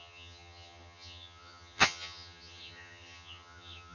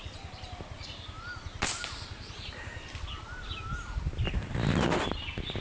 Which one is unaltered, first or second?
second